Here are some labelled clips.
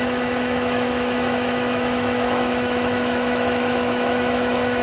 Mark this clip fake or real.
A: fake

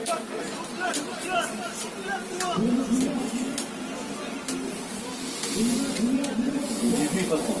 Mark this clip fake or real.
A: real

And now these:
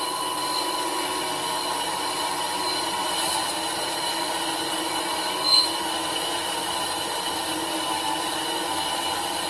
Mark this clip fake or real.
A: real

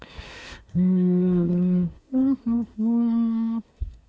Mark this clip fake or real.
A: fake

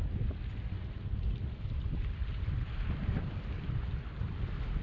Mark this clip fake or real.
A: real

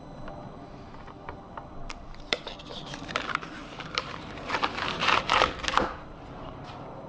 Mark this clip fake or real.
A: fake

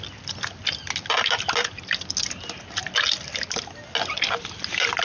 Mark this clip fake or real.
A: real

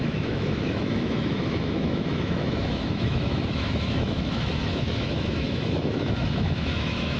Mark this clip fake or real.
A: fake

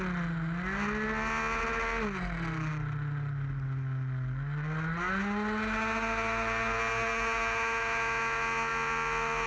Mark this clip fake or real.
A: real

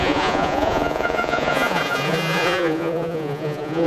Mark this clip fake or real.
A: fake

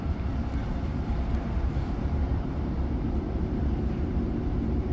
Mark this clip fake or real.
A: fake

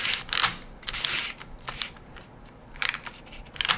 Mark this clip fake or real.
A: real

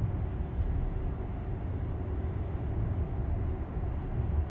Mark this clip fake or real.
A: real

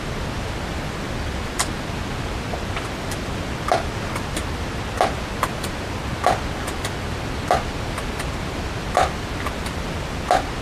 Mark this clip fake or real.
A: real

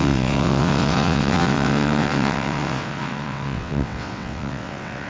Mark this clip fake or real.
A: fake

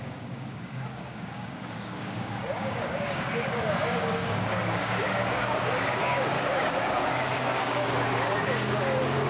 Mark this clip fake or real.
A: fake